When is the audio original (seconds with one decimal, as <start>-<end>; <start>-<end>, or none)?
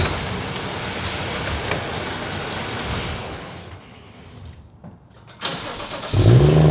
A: 0.0-3.2; 4.2-6.7